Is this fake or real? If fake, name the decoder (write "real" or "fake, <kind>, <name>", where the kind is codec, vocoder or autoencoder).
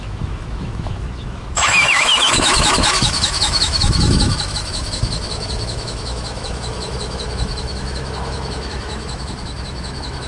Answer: fake, autoencoder, DAC-VAE